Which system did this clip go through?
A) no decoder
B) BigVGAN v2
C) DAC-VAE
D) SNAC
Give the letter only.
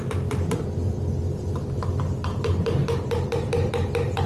A